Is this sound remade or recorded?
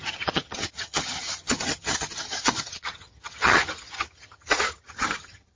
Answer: remade